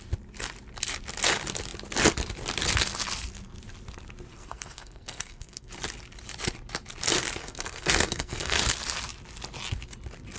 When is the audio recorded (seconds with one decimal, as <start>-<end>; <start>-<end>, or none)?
0.0-4.3; 5.7-7.4; 8.6-10.4